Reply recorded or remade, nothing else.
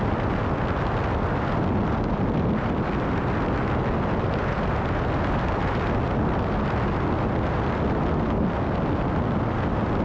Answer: recorded